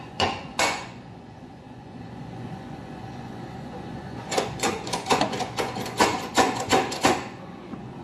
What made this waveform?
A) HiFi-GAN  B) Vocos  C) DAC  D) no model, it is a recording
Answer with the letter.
B